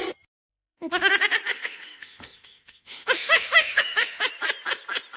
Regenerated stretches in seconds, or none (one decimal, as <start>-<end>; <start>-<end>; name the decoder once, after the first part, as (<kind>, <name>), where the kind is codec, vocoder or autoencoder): 0.5-1.1 (autoencoder, DAC-VAE); 1.5-4.3